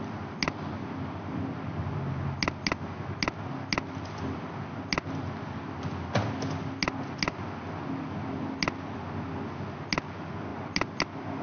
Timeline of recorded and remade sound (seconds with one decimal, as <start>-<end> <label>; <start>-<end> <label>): 0.0-11.4 recorded